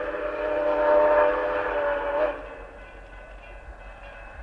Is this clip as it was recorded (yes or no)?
yes